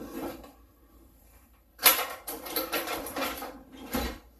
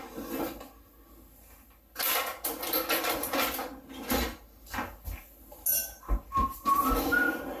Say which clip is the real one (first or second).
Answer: second